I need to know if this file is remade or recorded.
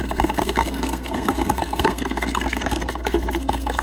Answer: remade